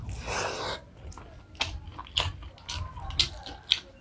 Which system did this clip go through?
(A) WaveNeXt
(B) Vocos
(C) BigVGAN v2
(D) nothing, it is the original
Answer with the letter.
D